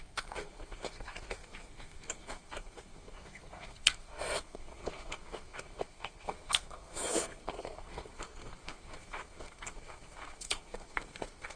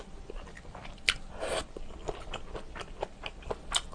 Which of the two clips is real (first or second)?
second